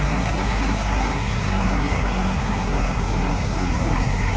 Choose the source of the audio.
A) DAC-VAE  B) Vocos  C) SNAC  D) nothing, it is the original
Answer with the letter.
C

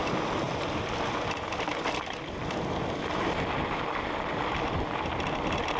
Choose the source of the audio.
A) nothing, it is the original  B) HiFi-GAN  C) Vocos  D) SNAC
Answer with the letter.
A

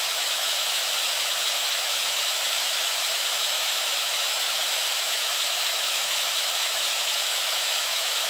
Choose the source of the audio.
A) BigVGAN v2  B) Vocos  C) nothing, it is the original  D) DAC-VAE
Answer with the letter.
D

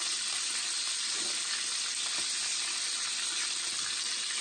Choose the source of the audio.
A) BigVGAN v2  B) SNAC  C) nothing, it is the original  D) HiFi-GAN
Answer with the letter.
C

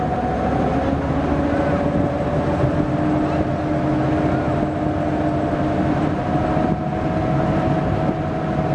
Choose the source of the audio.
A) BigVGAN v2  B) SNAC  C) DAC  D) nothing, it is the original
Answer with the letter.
D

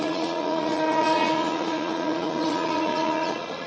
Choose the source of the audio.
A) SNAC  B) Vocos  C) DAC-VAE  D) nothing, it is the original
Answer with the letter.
B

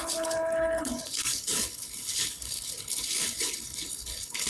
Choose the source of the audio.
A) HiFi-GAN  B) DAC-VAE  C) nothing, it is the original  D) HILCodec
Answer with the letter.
D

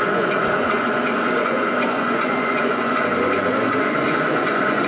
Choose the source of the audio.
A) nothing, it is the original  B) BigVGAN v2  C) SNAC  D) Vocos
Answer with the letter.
D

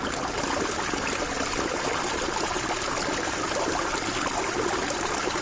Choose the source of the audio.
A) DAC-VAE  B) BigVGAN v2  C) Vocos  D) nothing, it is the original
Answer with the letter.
D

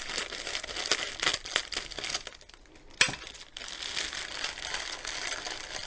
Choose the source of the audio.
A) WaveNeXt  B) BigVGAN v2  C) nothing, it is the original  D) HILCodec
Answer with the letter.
C